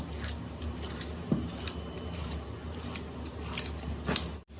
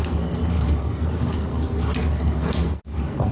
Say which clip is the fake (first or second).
second